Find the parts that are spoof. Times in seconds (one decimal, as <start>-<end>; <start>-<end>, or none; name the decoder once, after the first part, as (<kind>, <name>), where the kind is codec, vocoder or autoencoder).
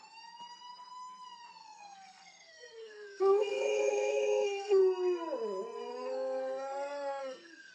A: 1.6-4.8 (codec, SNAC); 5.9-7.7